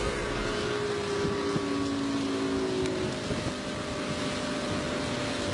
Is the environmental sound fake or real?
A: real